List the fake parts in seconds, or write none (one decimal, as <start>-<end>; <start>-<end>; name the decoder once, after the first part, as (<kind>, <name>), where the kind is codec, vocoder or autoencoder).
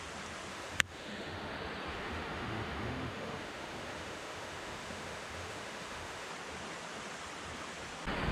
0.5-1.5 (autoencoder, DAC-VAE); 1.9-6.3